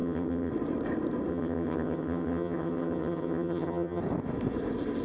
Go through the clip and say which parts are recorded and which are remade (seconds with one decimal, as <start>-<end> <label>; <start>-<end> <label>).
0.0-0.5 remade; 0.5-1.3 recorded; 1.3-4.0 remade; 4.0-5.0 recorded